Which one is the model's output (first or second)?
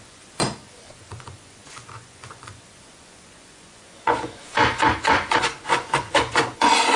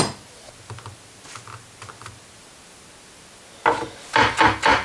first